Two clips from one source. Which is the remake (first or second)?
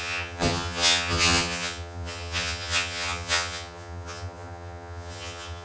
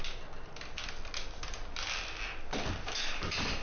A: first